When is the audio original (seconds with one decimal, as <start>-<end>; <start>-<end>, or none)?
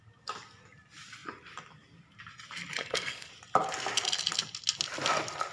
0.0-2.8; 3.3-5.5